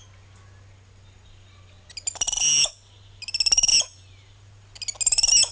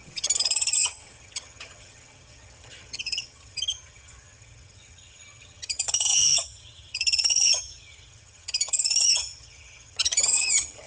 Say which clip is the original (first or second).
first